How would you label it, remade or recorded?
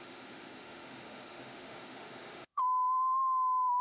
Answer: remade